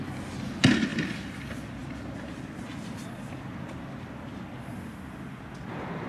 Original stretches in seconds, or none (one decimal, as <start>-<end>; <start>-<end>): 0.0-6.1